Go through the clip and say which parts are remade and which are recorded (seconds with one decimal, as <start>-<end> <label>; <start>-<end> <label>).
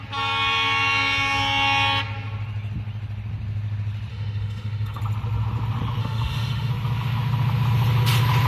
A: 0.0-4.1 recorded; 4.1-5.0 remade; 5.0-6.0 recorded; 6.0-6.7 remade; 6.7-8.5 recorded